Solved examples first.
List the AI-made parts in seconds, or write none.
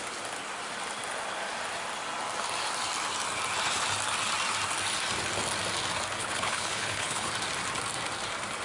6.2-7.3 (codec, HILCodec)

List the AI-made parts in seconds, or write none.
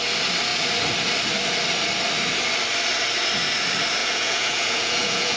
4.0-5.4 (vocoder, Vocos)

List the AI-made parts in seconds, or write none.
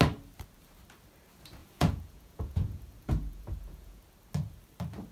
1.6-4.0 (vocoder, Vocos)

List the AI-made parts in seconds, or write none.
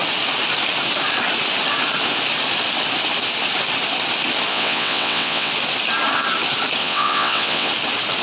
4.5-5.5 (vocoder, WaveNeXt); 6.8-7.7